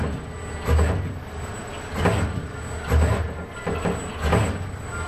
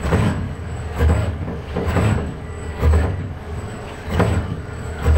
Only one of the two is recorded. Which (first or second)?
first